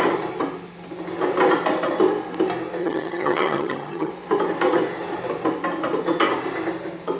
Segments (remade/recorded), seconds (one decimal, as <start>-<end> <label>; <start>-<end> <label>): 0.0-2.8 recorded; 2.8-4.1 remade; 4.1-7.2 recorded